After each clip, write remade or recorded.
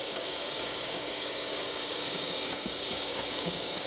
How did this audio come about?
remade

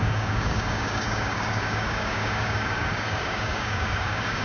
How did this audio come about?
remade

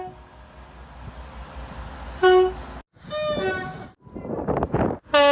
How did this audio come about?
recorded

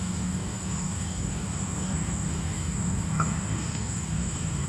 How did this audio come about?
remade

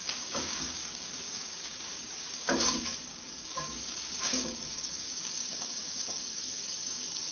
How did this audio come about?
remade